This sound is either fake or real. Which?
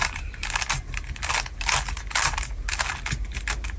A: real